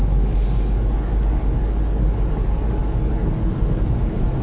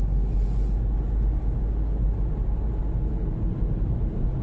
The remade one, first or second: first